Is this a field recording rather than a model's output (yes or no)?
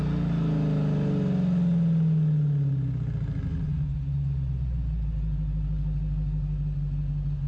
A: yes